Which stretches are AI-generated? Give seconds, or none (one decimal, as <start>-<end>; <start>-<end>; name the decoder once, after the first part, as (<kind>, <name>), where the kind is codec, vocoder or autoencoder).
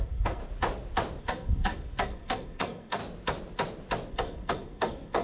0.0-0.4 (codec, SNAC); 1.2-3.0; 4.1-5.2